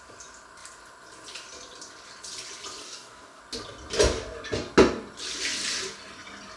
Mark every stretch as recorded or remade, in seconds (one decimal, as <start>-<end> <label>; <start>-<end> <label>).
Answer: 0.0-2.8 recorded; 2.8-3.4 remade; 3.4-6.6 recorded